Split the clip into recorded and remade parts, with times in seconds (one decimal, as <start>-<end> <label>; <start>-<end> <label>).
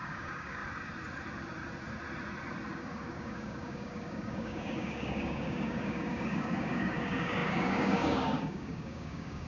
0.0-0.6 remade; 0.6-2.7 recorded; 2.7-9.5 remade